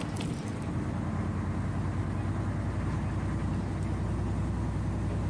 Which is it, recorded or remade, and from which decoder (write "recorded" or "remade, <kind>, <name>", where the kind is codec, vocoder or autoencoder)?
recorded